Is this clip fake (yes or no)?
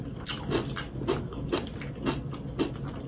no